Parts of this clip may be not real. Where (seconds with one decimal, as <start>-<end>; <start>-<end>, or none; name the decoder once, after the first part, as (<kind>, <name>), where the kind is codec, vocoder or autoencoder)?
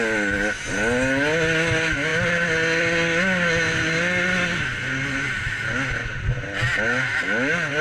none